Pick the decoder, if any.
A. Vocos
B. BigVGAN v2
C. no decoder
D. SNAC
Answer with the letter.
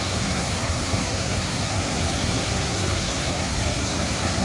D